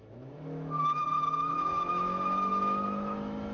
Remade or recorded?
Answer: remade